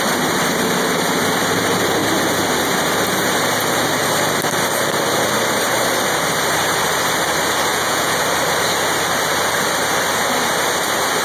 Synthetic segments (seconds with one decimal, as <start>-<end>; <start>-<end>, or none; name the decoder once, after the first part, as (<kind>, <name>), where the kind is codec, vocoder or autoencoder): 7.7-8.2 (vocoder, Vocos)